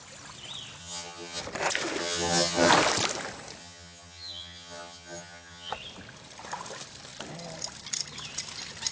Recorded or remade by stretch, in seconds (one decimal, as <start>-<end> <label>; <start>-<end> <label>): 0.0-0.8 recorded; 0.8-1.4 remade; 1.4-2.0 recorded; 2.0-2.7 remade; 2.7-3.6 recorded; 3.6-5.7 remade; 5.7-8.9 recorded